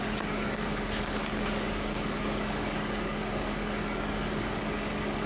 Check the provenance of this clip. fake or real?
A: fake